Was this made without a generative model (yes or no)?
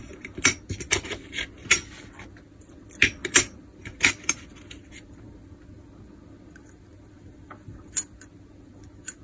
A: yes